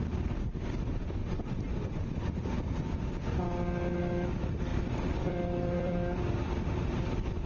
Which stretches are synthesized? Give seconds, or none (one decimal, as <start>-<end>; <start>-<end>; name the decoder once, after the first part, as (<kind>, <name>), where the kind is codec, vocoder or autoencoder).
4.7-5.9 (vocoder, BigVGAN v2)